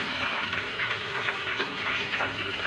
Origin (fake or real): fake